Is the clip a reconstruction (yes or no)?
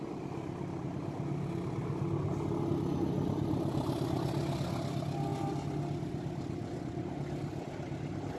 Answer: no